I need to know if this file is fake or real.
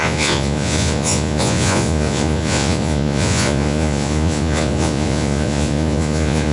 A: fake